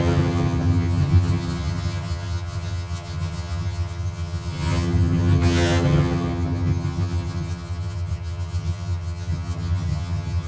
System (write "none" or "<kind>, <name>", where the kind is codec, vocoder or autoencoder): vocoder, HiFi-GAN